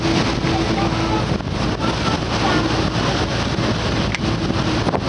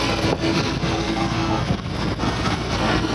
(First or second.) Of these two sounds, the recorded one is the first